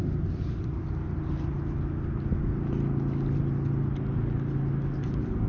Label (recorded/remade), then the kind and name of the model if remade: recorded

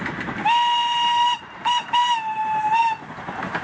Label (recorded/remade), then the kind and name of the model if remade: recorded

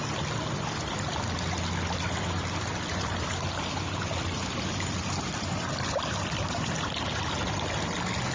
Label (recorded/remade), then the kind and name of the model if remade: recorded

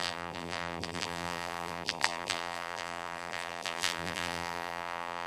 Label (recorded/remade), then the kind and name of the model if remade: remade, vocoder, BigVGAN v2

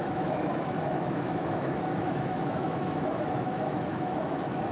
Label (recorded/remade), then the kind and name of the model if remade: remade, autoencoder, DAC-VAE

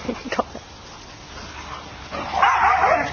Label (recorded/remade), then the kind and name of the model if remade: recorded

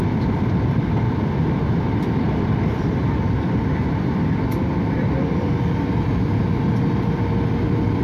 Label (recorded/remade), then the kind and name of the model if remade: remade, vocoder, BigVGAN v2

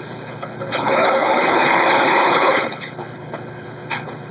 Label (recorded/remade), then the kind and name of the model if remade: remade, codec, HILCodec